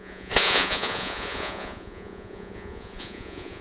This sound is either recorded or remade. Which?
remade